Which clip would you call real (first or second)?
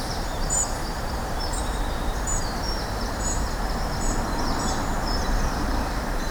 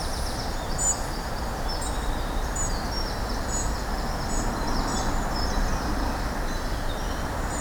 second